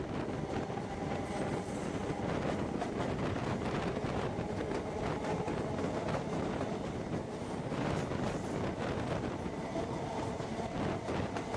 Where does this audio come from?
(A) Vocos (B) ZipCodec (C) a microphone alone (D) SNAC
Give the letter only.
C